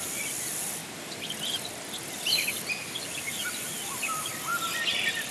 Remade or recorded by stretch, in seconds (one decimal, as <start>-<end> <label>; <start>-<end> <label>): 0.0-5.3 recorded